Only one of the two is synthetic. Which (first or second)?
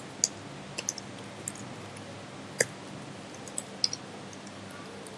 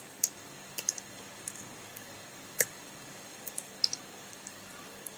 second